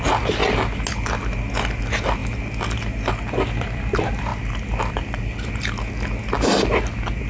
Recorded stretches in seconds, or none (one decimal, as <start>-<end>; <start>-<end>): 0.0-7.3